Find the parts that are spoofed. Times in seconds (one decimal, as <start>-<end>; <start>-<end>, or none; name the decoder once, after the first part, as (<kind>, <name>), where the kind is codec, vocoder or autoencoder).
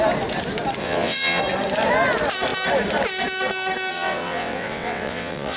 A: 0.8-1.4 (vocoder, WaveNeXt); 3.9-5.6